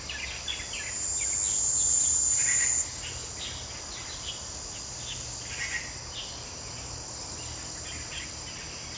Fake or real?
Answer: real